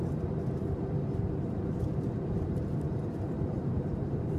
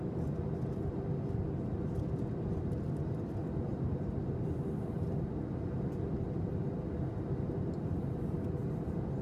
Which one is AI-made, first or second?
first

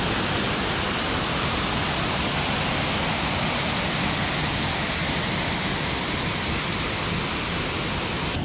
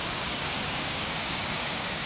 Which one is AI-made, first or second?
second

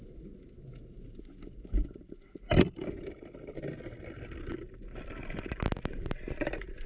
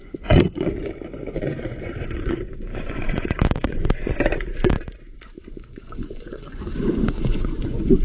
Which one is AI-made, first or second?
second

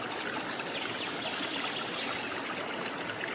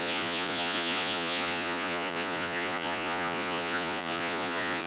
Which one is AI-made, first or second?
second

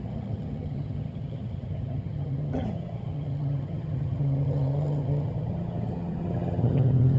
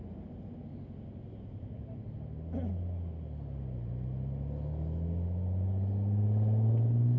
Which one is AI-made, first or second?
first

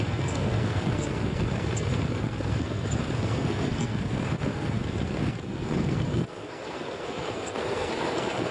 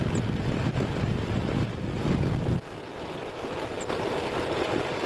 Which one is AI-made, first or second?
first